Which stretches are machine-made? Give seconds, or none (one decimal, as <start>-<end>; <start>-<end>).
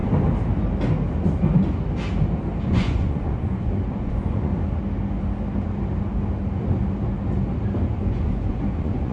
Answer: 2.6-4.5; 8.0-9.1